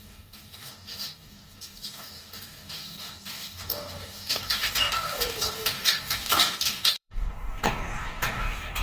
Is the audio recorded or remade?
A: remade